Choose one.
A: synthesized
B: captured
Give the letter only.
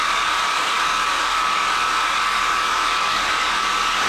A